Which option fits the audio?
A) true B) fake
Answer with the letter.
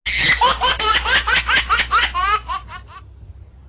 A